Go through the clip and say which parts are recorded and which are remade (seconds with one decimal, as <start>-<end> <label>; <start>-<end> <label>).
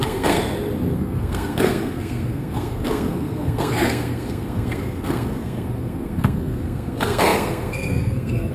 0.0-0.4 remade; 0.4-0.9 recorded; 0.9-8.5 remade